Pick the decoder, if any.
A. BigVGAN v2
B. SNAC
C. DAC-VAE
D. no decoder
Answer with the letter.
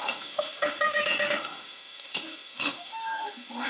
C